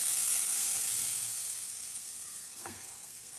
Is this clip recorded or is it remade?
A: remade